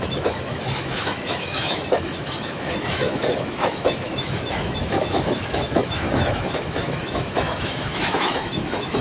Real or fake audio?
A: fake